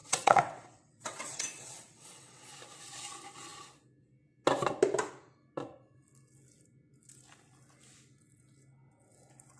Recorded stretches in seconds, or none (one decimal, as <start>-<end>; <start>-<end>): 2.5-9.6